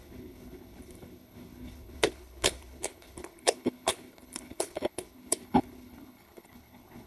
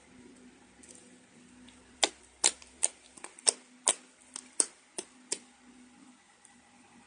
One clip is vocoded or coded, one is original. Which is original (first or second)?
second